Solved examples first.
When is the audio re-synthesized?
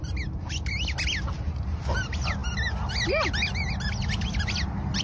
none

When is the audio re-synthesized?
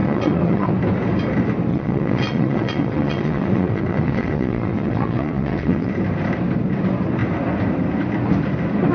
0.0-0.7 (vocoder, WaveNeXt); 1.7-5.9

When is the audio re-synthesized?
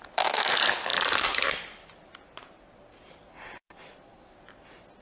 none